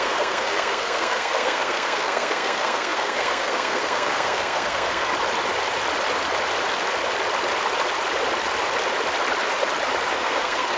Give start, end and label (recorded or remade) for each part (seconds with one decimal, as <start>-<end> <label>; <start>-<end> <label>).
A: 0.0-5.1 remade; 5.1-10.1 recorded; 10.1-10.8 remade